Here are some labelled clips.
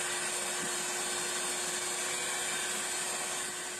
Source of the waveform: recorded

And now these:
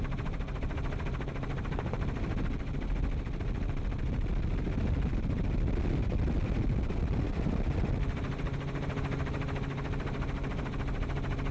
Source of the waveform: recorded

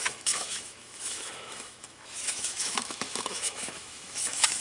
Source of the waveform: remade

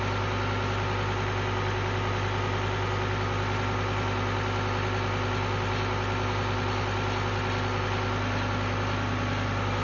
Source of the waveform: recorded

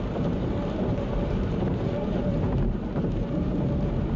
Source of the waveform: remade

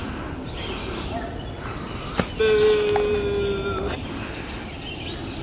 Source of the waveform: recorded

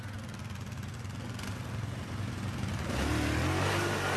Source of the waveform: recorded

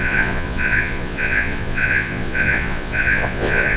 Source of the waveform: remade